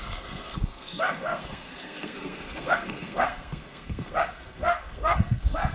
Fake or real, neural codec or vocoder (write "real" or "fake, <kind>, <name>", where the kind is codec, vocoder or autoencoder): fake, codec, SNAC